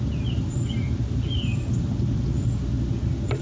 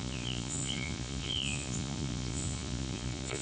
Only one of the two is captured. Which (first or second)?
first